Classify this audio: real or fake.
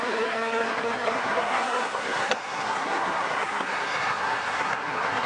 fake